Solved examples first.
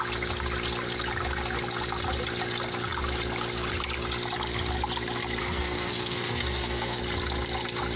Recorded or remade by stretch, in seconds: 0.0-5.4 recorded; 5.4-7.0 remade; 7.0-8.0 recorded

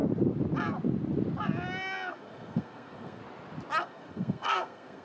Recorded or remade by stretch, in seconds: 0.0-2.1 recorded; 2.1-3.2 remade; 3.2-3.8 recorded; 3.8-5.0 remade

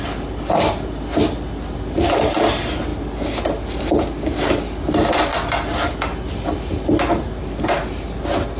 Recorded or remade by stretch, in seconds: 0.0-8.6 recorded